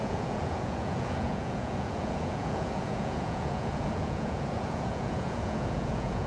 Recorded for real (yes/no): no